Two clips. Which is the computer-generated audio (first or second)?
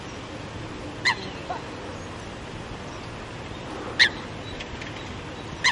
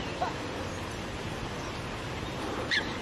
second